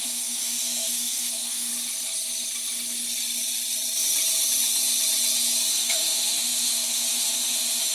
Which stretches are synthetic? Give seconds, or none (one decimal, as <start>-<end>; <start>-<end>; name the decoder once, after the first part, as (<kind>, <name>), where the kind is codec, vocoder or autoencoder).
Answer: 0.0-1.7 (autoencoder, DAC-VAE); 5.7-7.9